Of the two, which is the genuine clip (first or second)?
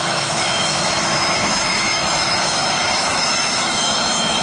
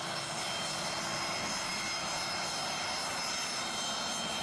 second